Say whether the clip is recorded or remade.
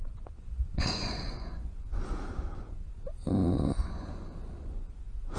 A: remade